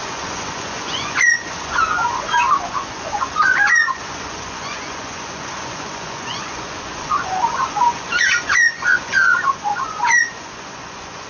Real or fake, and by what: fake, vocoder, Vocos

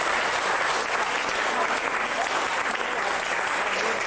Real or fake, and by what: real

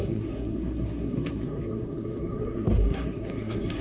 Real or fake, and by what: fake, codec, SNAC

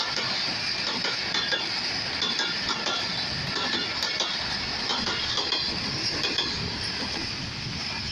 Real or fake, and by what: real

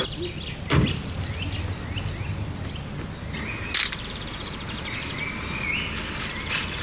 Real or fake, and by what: real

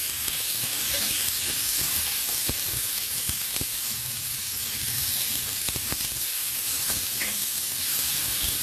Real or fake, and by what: fake, codec, DAC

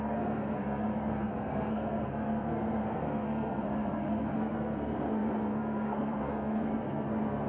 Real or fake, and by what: fake, codec, SNAC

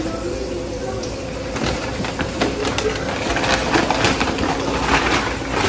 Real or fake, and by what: real